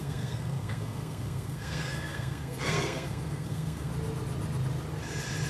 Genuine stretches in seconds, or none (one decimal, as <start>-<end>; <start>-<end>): 3.9-5.5